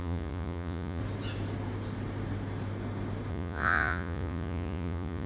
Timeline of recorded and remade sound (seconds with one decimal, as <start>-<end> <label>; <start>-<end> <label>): 0.0-1.0 remade; 1.0-3.3 recorded; 3.3-5.3 remade